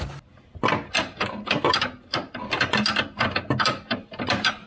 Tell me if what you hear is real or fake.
real